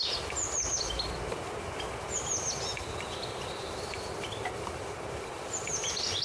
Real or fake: real